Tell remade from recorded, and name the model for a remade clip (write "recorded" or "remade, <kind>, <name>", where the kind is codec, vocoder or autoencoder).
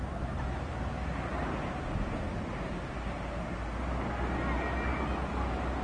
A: recorded